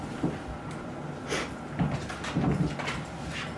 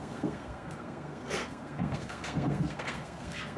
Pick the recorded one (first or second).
first